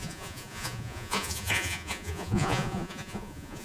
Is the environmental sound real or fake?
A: fake